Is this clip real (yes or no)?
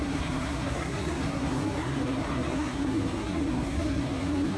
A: no